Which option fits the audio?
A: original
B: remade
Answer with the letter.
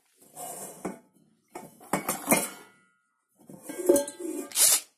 A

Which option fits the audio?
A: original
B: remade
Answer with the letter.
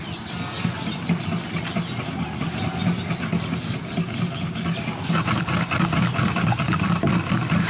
A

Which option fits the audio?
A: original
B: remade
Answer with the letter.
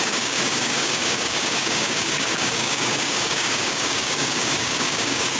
B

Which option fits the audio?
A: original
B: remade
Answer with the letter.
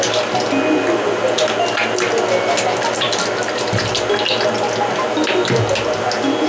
A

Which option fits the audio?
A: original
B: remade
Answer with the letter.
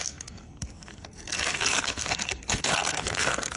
B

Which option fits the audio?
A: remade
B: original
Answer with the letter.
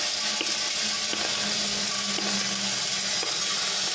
B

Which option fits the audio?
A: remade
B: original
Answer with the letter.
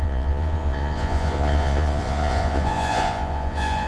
A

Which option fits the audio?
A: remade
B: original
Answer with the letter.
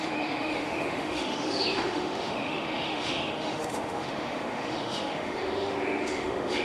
A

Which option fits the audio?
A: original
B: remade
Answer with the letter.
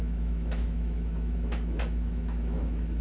B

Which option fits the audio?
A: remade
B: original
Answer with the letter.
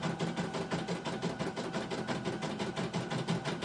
B